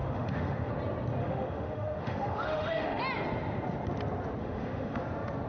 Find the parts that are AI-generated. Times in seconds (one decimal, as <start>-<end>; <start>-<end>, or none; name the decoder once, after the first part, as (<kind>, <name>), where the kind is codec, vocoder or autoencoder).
0.0-0.7 (autoencoder, DAC-VAE); 1.2-3.0; 4.4-5.0